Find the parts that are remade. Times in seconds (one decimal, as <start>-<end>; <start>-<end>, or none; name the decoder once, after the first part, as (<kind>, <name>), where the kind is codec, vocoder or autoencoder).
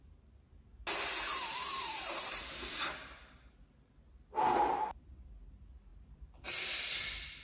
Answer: 1.3-3.7 (vocoder, BigVGAN v2); 5.9-6.9